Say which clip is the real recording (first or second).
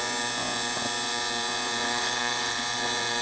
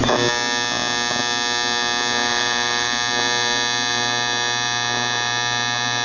second